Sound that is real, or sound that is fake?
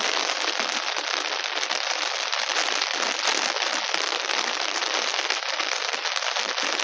fake